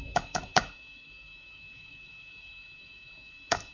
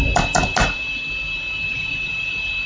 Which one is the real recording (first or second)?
second